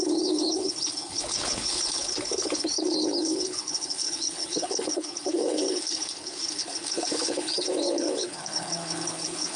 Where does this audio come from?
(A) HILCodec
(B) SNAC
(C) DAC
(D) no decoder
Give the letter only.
A